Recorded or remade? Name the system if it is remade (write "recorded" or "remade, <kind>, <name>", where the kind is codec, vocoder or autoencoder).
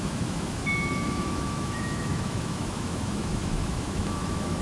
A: remade, autoencoder, DAC-VAE